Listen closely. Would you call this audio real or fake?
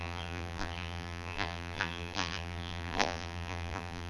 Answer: fake